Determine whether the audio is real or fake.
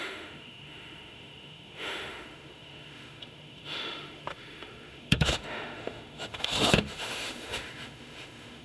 fake